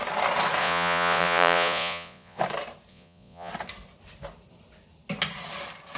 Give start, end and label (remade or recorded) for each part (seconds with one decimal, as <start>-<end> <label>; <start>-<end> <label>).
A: 0.0-0.6 recorded; 0.6-2.4 remade; 2.4-2.9 recorded; 2.9-3.5 remade; 3.5-6.0 recorded